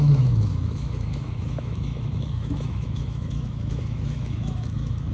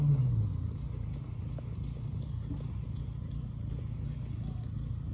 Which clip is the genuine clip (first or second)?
second